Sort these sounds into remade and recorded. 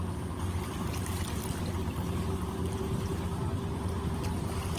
recorded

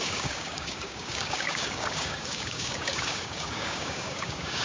remade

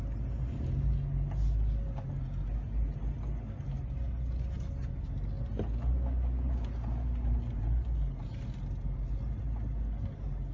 recorded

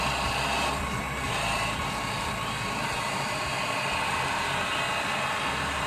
recorded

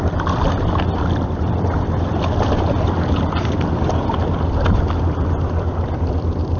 recorded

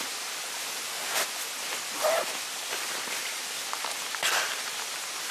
recorded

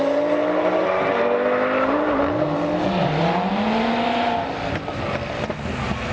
recorded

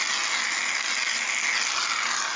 recorded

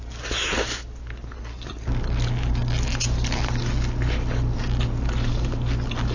recorded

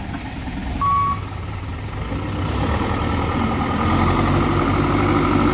recorded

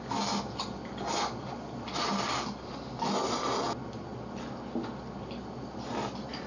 recorded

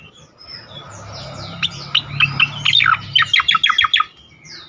recorded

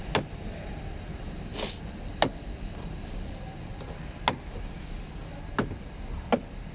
recorded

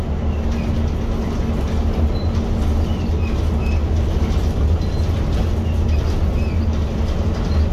recorded